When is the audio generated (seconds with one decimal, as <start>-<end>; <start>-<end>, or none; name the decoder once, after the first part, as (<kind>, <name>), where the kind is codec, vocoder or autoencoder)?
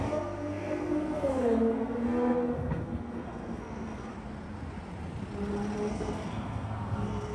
0.0-4.1 (codec, SNAC); 5.9-7.3